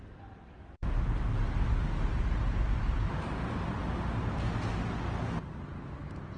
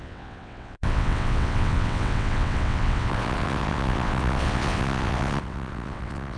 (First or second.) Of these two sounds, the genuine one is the first